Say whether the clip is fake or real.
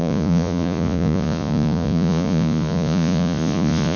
fake